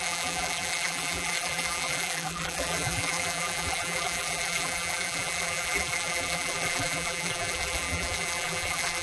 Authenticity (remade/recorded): remade